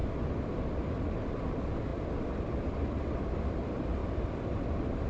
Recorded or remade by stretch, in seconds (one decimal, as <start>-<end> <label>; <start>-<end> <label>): 0.0-4.0 recorded; 4.0-5.1 remade